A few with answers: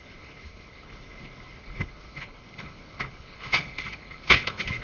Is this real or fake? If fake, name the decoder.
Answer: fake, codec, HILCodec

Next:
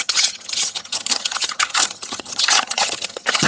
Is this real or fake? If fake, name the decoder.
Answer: fake, vocoder, HiFi-GAN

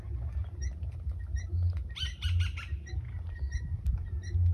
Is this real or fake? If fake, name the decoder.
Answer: real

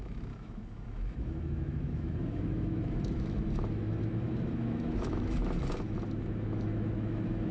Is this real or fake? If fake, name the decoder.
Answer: fake, autoencoder, DAC-VAE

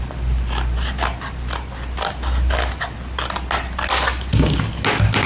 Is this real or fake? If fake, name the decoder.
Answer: real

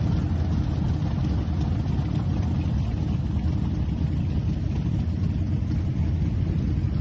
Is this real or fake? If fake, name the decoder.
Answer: real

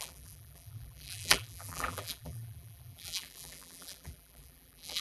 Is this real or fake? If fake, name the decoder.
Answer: fake, vocoder, BigVGAN v2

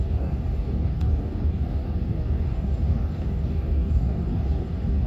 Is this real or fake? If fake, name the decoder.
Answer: fake, codec, DAC